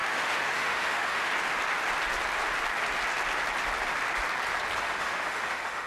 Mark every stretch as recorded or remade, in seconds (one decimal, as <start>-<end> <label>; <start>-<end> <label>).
0.0-1.3 remade; 1.3-4.8 recorded; 4.8-5.9 remade